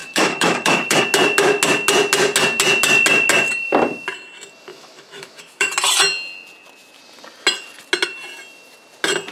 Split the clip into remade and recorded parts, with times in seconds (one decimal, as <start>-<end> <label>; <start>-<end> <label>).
0.0-1.0 remade; 1.0-4.7 recorded; 4.7-5.7 remade; 5.7-9.3 recorded